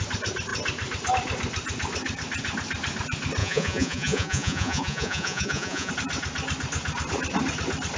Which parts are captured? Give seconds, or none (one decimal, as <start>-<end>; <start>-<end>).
0.0-3.4; 5.9-8.0